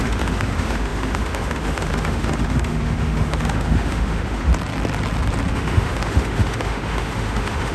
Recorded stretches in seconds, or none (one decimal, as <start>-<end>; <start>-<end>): 4.5-5.5